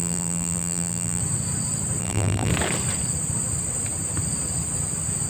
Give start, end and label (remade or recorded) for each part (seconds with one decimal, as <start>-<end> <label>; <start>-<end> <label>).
0.0-1.2 remade; 1.2-2.0 recorded; 2.0-2.5 remade; 2.5-5.3 recorded